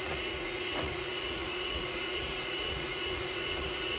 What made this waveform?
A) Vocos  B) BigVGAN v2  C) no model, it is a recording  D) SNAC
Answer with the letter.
A